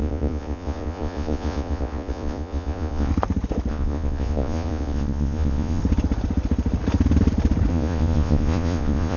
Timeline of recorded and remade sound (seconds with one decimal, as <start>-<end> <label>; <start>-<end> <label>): 0.0-3.1 remade; 3.1-3.7 recorded; 3.7-5.8 remade; 5.8-7.7 recorded; 7.7-9.2 remade